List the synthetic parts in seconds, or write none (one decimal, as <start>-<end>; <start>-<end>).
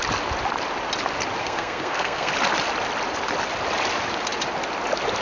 1.4-2.3